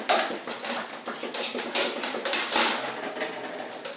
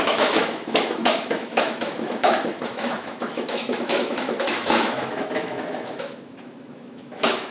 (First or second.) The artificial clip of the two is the second